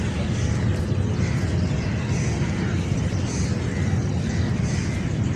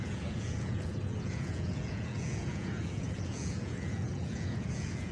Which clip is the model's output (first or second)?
second